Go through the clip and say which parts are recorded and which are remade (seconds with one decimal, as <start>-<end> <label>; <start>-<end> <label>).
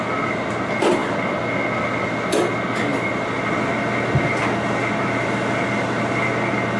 0.0-6.8 recorded